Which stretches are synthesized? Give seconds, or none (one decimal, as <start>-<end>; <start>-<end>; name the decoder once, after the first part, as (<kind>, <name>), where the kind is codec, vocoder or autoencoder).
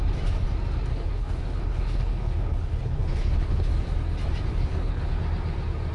0.9-3.7 (codec, HILCodec); 4.5-5.1